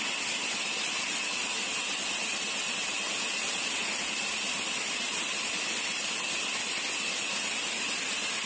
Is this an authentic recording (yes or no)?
yes